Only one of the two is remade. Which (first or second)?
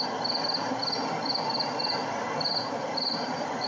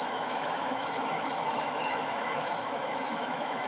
second